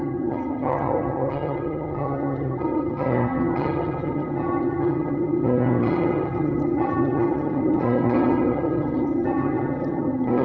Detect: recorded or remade remade